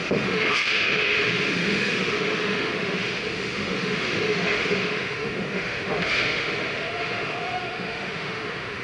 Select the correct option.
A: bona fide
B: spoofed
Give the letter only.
B